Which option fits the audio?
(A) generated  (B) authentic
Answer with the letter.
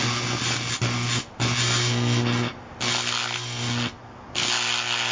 B